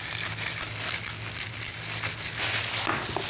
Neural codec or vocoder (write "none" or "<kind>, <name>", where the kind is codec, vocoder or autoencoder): none